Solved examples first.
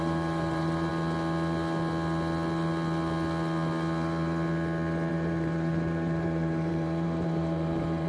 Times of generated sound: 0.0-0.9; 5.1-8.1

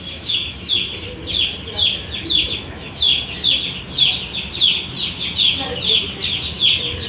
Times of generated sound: 0.0-0.9; 2.6-3.1

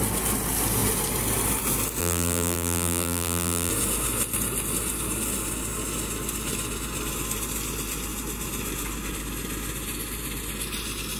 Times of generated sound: 2.0-3.7

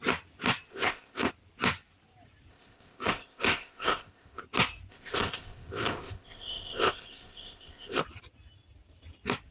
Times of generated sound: 0.7-1.3; 2.5-4.4; 4.9-8.0

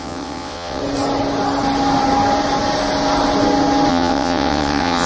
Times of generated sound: 0.0-0.8; 3.9-5.1

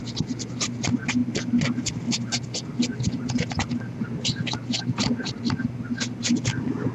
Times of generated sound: none